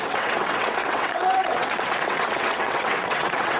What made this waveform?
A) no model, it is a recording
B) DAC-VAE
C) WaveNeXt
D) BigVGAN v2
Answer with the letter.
C